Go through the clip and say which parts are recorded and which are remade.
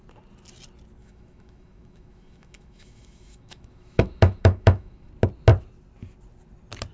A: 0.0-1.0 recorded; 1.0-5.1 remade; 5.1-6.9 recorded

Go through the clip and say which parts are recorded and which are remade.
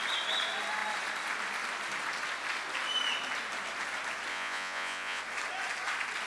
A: 0.0-4.3 recorded; 4.3-5.2 remade; 5.2-6.3 recorded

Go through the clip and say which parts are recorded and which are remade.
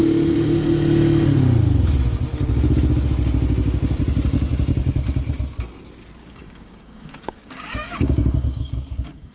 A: 0.0-6.2 recorded; 6.2-9.3 remade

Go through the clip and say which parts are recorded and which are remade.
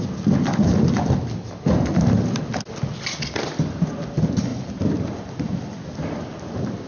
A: 0.0-4.5 recorded; 4.5-5.3 remade; 5.3-6.9 recorded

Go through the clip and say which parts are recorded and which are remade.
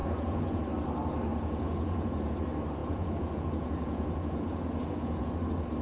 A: 0.0-0.6 remade; 0.6-1.3 recorded; 1.3-2.3 remade; 2.3-2.8 recorded; 2.8-5.3 remade; 5.3-5.8 recorded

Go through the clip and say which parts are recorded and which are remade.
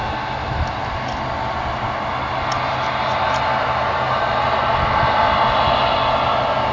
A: 0.0-6.7 recorded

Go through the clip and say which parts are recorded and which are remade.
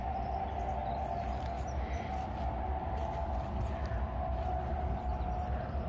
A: 0.0-5.9 recorded